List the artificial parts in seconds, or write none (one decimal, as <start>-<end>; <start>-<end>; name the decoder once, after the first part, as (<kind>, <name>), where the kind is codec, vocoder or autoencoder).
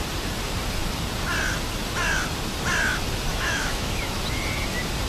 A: 3.3-4.2 (autoencoder, DAC-VAE)